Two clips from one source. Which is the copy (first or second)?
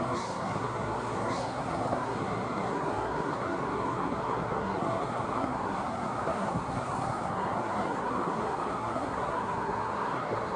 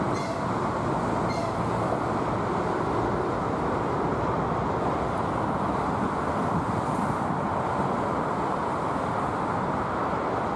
first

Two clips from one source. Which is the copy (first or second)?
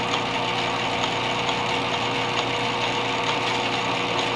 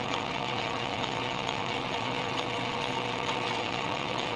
second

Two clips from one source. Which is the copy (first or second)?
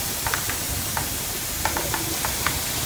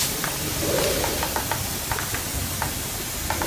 first